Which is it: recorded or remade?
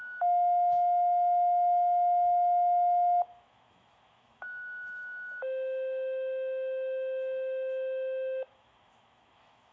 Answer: remade